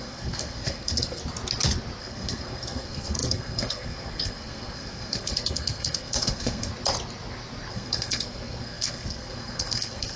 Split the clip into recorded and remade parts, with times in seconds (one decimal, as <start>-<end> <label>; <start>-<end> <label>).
0.0-1.2 remade; 1.2-2.0 recorded; 2.0-6.7 remade; 6.7-7.7 recorded; 7.7-10.2 remade